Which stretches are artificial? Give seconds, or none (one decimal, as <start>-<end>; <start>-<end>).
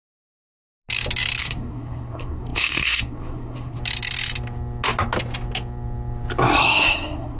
1.4-3.8; 6.6-7.4